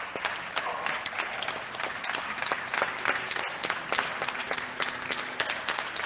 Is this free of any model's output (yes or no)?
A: yes